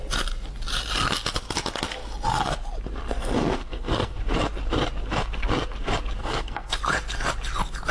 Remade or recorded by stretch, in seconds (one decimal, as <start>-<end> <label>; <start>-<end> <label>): 0.0-3.2 recorded; 3.2-4.2 remade; 4.2-6.2 recorded; 6.2-6.8 remade; 6.8-7.9 recorded